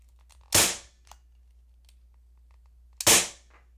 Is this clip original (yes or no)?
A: yes